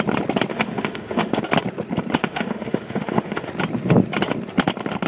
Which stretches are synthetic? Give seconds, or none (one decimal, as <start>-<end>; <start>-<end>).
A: 0.5-1.4; 2.2-3.5